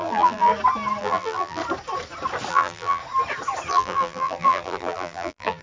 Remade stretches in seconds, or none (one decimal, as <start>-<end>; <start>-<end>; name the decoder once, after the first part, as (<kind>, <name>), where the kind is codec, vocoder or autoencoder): 0.0-0.5 (vocoder, BigVGAN v2); 1.0-1.6; 2.5-3.0; 3.7-5.6